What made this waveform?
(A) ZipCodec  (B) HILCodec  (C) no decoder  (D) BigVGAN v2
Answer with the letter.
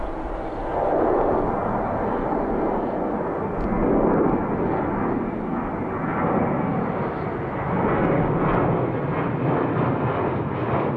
C